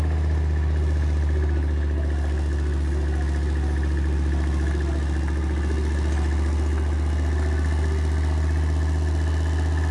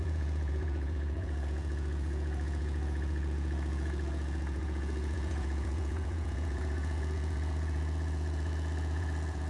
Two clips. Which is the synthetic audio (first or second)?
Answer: second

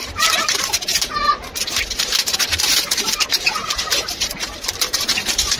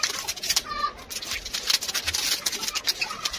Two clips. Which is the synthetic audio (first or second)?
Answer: first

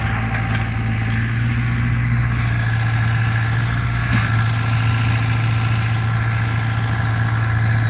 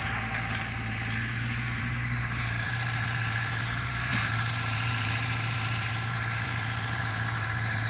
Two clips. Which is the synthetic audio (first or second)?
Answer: second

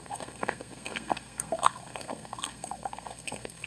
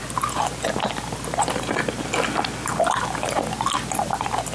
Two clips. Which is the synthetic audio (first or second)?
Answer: first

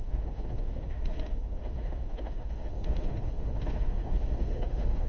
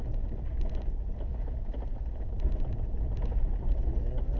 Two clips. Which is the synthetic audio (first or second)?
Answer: first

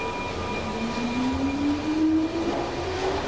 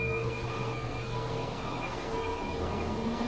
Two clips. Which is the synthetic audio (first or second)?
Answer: second